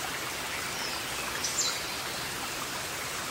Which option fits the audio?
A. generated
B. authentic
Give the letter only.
B